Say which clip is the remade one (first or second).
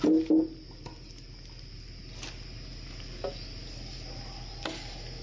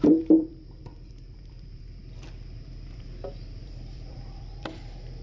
second